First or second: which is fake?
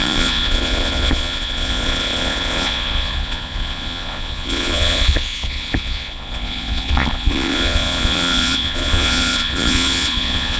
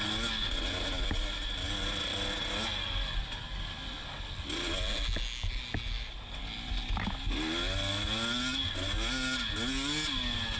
first